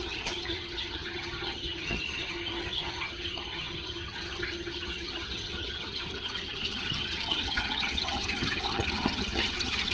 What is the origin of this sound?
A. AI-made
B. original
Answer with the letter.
A